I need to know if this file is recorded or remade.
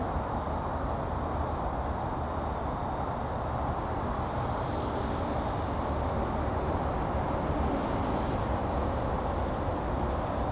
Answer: recorded